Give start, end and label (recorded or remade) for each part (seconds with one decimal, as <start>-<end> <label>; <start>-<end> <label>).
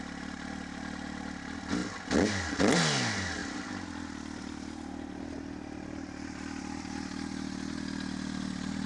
0.0-8.9 recorded